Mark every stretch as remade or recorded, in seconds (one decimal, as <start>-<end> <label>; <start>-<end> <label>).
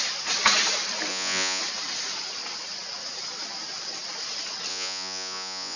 0.0-1.1 recorded; 1.1-1.6 remade; 1.6-4.7 recorded; 4.7-5.8 remade